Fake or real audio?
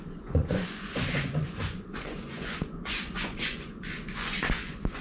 fake